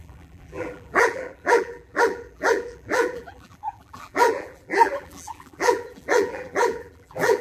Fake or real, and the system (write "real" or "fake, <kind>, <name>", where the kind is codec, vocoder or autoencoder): fake, vocoder, BigVGAN v2